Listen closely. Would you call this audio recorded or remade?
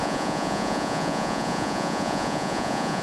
remade